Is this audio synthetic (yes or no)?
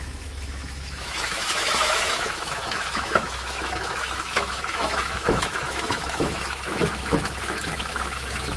yes